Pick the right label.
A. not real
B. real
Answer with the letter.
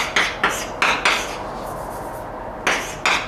B